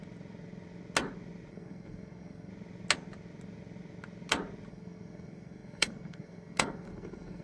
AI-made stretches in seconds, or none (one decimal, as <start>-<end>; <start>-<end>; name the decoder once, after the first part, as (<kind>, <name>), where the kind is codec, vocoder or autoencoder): 1.5-2.5 (codec, SNAC); 4.7-7.4

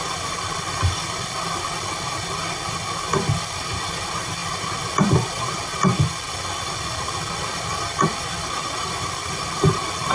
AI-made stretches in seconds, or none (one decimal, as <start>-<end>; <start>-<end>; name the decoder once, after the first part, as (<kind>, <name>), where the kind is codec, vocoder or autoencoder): none

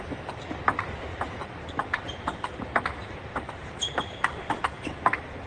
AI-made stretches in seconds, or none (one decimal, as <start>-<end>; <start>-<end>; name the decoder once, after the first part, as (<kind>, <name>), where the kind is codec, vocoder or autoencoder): 1.1-2.5 (vocoder, BigVGAN v2); 3.0-3.9

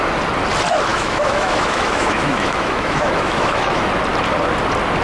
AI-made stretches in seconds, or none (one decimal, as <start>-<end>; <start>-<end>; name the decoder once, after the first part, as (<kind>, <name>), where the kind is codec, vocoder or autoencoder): 0.9-3.9 (autoencoder, DAC-VAE)

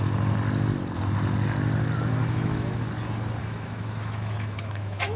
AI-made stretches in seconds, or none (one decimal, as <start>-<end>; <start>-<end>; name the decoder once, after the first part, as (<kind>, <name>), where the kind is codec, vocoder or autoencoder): 2.2-2.8 (autoencoder, DAC-VAE); 3.4-5.2

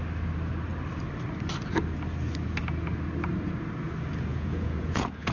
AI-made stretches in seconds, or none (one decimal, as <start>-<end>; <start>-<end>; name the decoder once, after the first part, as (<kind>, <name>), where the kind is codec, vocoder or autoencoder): 4.3-5.3 (vocoder, Vocos)

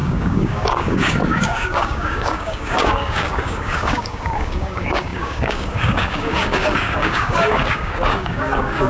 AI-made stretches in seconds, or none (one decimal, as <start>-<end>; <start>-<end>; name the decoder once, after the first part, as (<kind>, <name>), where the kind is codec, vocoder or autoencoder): 0.0-8.9 (codec, DAC)

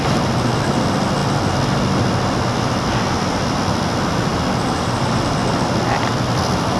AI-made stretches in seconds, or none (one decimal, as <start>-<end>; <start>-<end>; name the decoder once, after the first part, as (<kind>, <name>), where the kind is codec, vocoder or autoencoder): 4.3-5.4 (vocoder, BigVGAN v2)